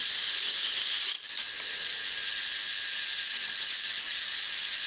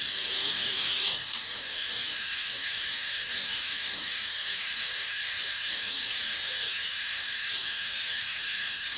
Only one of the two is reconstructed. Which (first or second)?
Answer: second